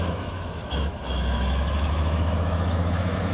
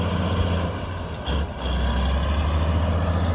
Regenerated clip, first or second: first